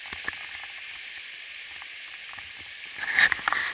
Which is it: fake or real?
real